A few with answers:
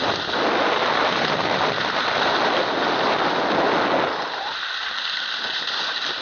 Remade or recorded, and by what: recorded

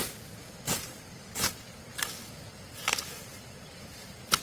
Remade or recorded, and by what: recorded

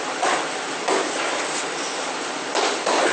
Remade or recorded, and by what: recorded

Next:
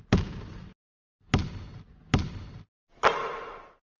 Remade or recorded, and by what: recorded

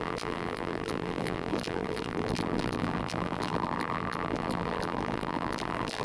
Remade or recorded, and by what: remade, vocoder, BigVGAN v2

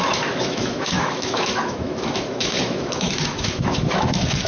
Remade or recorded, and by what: remade, autoencoder, DAC-VAE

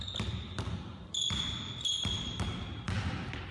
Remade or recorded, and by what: recorded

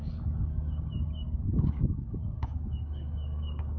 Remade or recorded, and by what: remade, codec, DAC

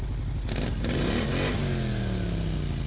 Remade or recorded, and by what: recorded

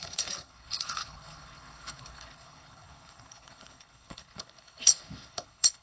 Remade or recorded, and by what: remade, codec, HILCodec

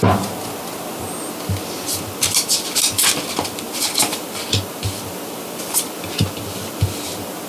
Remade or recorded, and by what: recorded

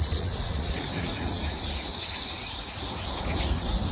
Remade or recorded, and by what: remade, vocoder, Vocos